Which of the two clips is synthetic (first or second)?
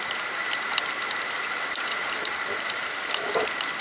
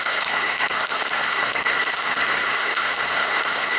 second